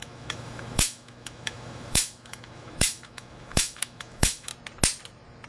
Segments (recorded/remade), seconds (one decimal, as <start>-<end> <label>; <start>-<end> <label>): 0.0-4.5 remade; 4.5-5.5 recorded